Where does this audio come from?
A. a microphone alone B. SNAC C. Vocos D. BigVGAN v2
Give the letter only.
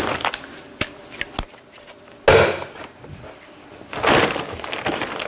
A